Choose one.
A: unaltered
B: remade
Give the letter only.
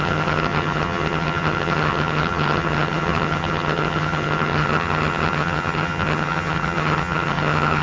B